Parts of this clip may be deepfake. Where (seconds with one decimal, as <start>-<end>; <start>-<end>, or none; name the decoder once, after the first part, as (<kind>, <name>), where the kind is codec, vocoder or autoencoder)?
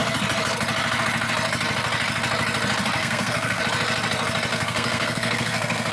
3.0-3.6 (codec, SNAC); 4.5-5.9